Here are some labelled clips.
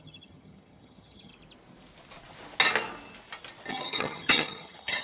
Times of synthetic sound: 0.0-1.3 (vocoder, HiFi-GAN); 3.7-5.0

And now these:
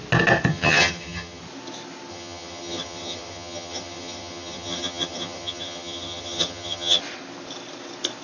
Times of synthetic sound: 0.5-1.4 (vocoder, HiFi-GAN); 2.1-7.0

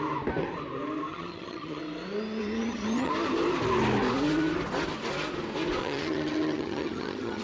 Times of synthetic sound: 1.1-1.8 (vocoder, HiFi-GAN); 2.4-3.1; 5.8-7.4